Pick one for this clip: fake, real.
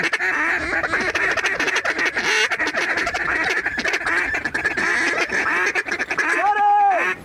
real